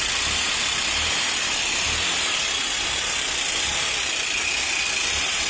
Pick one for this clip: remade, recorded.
recorded